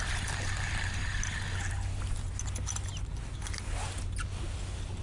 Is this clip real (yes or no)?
yes